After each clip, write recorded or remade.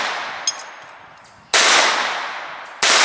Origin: recorded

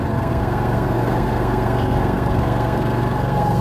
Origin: remade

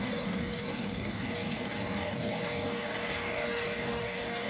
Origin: remade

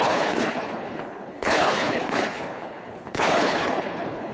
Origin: remade